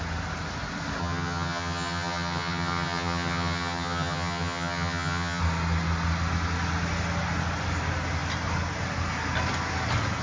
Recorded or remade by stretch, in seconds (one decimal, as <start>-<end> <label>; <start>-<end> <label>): 0.0-1.0 recorded; 1.0-5.4 remade; 5.4-10.2 recorded